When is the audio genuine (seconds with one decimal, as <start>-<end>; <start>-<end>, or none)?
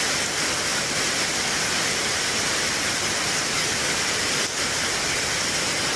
0.0-6.0